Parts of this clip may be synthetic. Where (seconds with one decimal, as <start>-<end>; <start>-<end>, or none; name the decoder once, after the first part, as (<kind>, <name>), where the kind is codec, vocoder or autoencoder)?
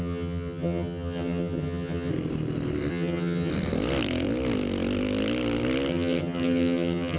0.0-2.1 (vocoder, HiFi-GAN); 2.9-3.5; 5.9-7.2